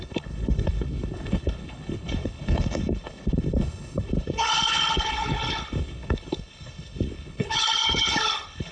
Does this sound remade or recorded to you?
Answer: remade